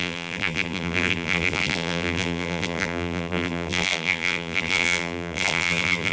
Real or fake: fake